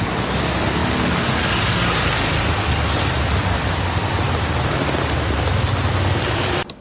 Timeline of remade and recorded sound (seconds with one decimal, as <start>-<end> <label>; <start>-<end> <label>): 0.0-6.8 recorded